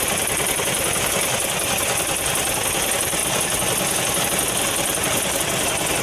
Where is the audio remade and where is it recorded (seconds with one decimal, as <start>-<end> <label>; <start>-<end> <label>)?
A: 0.0-3.2 remade; 3.2-4.2 recorded; 4.2-6.0 remade